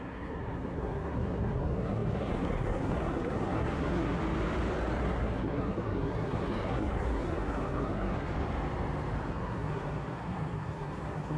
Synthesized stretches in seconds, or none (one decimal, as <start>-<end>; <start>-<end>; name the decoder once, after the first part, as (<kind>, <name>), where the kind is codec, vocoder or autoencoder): 0.0-4.2 (codec, SNAC); 5.0-8.3; 9.3-11.4